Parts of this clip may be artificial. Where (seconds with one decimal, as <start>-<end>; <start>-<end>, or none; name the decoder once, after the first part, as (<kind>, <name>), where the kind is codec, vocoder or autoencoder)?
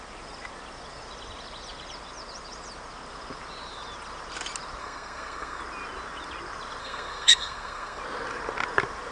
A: 4.8-5.6 (codec, SNAC); 6.8-8.0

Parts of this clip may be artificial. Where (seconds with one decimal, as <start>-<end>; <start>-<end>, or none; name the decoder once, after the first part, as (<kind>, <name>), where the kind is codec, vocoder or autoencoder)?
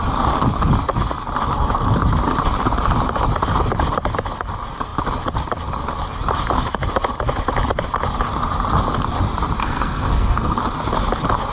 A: 9.6-10.6 (codec, SNAC)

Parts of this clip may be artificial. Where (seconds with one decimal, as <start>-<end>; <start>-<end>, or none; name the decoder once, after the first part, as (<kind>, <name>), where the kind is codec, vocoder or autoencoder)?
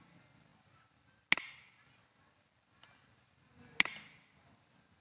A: none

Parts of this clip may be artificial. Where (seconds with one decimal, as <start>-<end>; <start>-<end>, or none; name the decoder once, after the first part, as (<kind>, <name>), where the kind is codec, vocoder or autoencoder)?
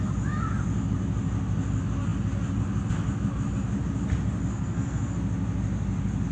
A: 4.5-5.1 (codec, SNAC)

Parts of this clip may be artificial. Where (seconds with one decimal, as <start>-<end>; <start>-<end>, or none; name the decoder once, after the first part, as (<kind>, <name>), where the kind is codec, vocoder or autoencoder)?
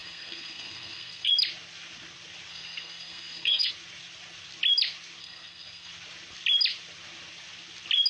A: 0.0-1.3 (codec, SNAC); 2.5-3.7; 5.2-5.9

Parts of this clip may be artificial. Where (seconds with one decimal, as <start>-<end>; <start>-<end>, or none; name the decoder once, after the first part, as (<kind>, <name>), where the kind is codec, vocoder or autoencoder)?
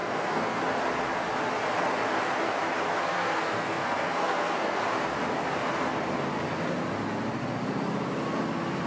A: 0.0-0.6 (codec, SNAC); 3.0-4.8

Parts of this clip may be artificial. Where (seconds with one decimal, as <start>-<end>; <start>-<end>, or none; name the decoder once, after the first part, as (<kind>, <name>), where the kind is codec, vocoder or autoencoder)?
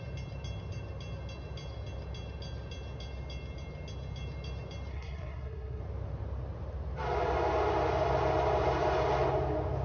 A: 4.9-5.8 (codec, SNAC)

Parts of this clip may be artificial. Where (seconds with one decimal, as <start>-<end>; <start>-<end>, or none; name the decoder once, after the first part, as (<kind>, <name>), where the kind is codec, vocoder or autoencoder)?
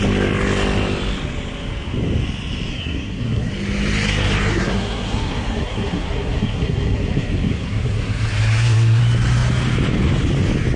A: 2.7-3.5 (codec, SNAC); 4.5-9.0